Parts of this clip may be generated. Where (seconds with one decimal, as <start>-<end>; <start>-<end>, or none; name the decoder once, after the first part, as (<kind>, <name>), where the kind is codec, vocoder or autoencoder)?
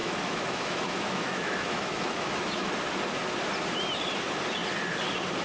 0.0-2.7 (autoencoder, DAC-VAE)